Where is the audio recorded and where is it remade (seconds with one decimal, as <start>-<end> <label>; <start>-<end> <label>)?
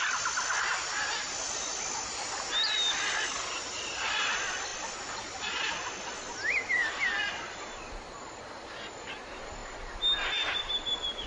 0.0-11.3 recorded